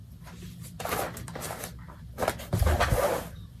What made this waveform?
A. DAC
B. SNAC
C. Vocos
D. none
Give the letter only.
D